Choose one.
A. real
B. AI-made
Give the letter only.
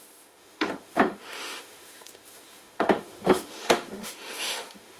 B